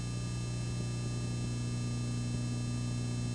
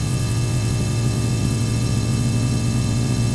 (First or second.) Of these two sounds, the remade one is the second